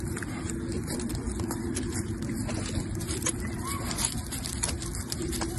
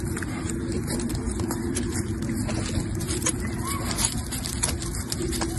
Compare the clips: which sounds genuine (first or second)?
second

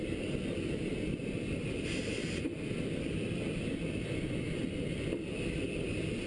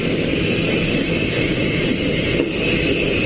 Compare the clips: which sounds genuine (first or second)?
second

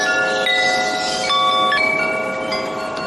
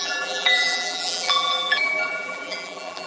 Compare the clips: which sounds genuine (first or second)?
first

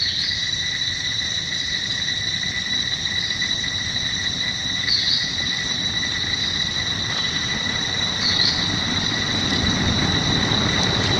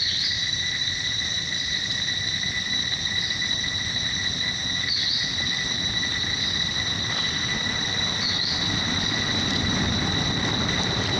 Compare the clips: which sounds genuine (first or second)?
second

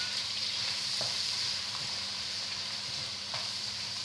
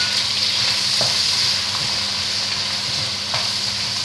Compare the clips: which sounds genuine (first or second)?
second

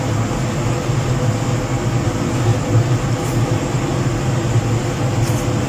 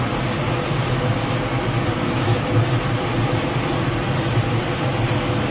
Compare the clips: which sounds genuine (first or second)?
first